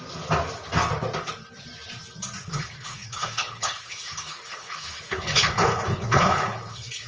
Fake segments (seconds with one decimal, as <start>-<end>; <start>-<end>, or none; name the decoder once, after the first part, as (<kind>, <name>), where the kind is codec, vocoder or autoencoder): 2.4-7.1 (codec, HILCodec)